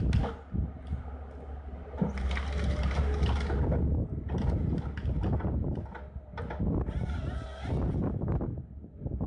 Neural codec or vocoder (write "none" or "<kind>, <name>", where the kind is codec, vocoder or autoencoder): none